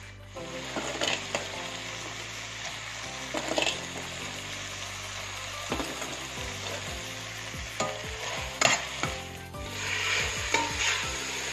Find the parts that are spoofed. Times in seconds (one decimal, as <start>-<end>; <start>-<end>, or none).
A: none